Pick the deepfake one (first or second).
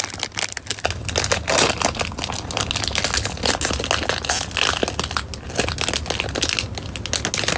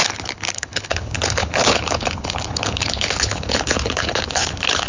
second